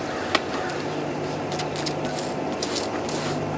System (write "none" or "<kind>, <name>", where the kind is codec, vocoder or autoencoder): none